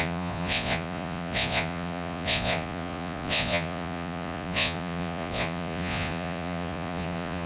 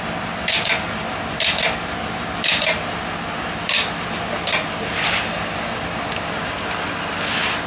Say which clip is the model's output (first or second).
first